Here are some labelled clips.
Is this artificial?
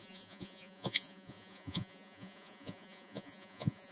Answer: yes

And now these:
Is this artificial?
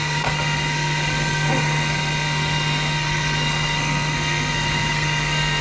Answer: yes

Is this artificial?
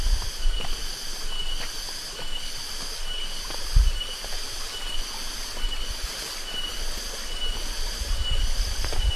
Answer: no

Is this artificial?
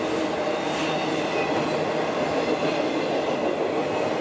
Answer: no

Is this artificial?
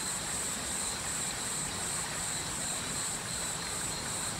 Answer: yes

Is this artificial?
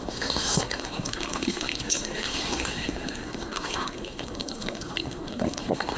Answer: yes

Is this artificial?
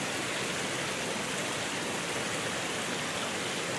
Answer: no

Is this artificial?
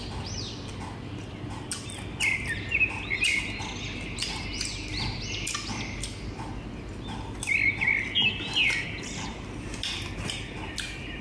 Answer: no